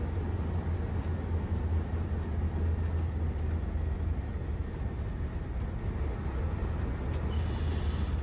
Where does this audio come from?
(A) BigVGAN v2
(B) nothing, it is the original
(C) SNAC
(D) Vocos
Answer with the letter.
B